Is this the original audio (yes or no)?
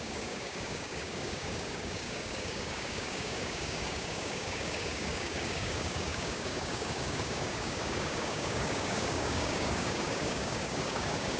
no